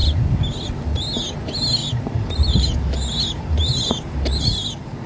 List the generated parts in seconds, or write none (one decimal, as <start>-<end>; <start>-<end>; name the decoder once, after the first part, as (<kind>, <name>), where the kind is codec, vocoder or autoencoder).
1.8-5.1 (vocoder, BigVGAN v2)